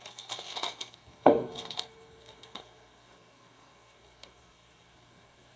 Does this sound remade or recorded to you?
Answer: remade